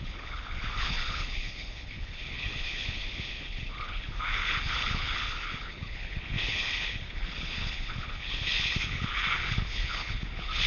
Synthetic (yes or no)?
yes